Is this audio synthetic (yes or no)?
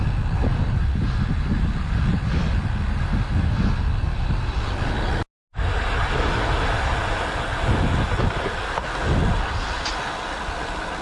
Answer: no